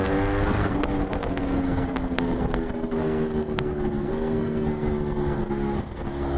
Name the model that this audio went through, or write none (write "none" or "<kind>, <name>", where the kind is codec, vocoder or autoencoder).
codec, SNAC